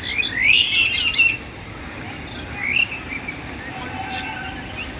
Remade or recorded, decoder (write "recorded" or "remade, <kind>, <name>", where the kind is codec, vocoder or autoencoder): recorded